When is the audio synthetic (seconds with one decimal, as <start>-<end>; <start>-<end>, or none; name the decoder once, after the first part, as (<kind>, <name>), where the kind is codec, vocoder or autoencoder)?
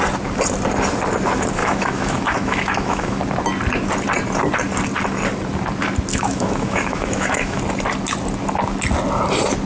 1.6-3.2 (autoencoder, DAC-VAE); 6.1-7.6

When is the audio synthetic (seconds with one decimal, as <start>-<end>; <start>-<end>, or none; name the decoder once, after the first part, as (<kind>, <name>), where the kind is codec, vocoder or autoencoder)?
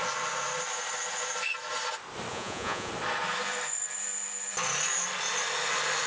2.3-2.9 (vocoder, Vocos)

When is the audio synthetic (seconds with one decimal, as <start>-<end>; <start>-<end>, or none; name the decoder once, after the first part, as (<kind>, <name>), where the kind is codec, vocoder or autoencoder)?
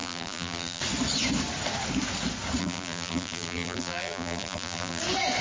0.0-0.8 (vocoder, BigVGAN v2); 2.6-5.0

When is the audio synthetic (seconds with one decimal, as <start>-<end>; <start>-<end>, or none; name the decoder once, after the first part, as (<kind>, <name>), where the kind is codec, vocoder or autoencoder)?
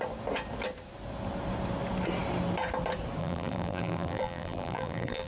3.2-5.3 (vocoder, BigVGAN v2)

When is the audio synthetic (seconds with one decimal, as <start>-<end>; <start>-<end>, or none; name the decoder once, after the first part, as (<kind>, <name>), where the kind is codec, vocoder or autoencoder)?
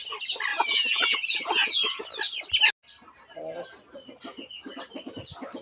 0.5-2.0 (vocoder, Vocos)